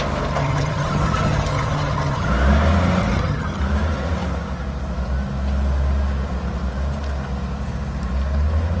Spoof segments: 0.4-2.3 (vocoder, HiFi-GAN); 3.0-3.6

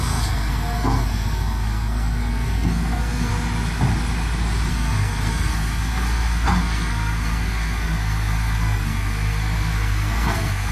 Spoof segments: 0.0-3.3 (codec, SNAC); 4.7-10.7

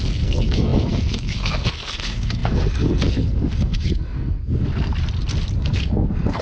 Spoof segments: 0.0-4.9 (codec, SNAC); 5.6-6.4

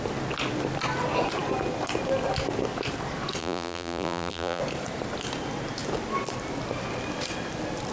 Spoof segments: 3.4-4.6 (vocoder, BigVGAN v2)

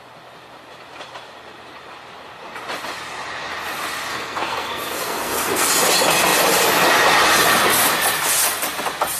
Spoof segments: 4.1-5.7 (codec, SNAC)

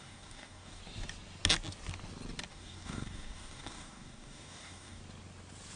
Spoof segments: 0.0-0.8 (codec, DAC); 2.5-5.0

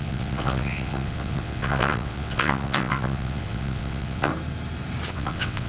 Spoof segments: 0.0-4.3 (vocoder, WaveNeXt); 5.1-5.7